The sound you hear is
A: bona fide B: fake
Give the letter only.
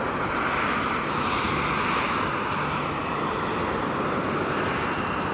A